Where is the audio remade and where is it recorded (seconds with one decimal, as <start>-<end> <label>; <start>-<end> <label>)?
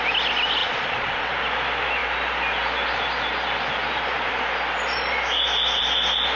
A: 0.0-0.6 recorded; 0.6-1.2 remade; 1.2-6.4 recorded